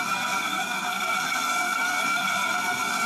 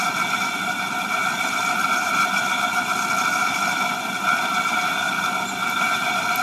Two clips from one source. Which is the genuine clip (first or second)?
second